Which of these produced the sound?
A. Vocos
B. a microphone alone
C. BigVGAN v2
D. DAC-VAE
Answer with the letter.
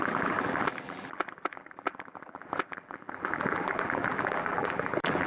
C